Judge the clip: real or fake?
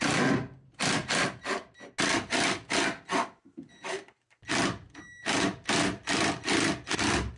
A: real